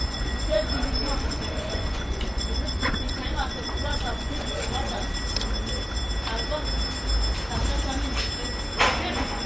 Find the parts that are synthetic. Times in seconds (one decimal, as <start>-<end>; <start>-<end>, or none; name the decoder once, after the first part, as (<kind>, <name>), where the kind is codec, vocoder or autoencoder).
0.0-5.1 (vocoder, Vocos); 9.0-9.5